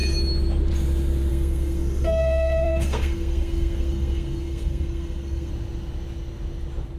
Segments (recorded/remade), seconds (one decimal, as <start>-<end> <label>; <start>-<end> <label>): 0.0-1.3 recorded; 1.3-5.5 remade; 5.5-7.0 recorded